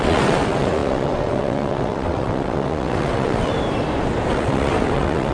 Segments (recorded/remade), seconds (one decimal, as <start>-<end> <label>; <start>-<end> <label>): 0.0-3.5 remade; 3.5-4.3 recorded; 4.3-5.3 remade